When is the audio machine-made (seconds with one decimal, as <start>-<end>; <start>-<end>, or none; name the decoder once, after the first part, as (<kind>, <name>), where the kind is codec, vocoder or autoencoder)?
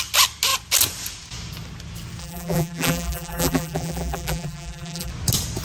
2.2-5.1 (vocoder, BigVGAN v2)